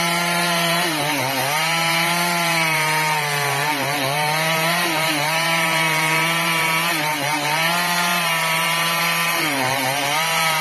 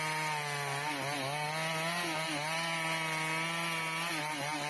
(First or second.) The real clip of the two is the second